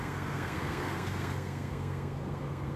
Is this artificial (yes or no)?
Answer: yes